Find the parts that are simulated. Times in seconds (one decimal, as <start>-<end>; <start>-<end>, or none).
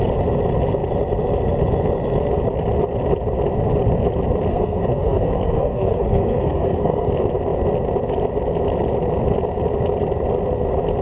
4.5-7.1